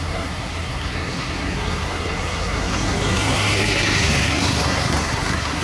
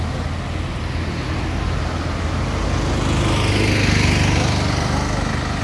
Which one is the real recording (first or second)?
second